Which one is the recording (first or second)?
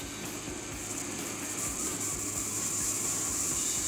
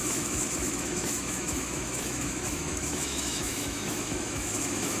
first